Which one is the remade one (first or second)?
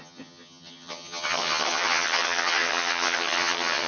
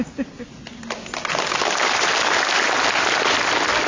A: first